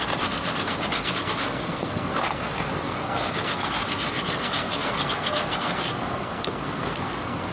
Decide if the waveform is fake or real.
fake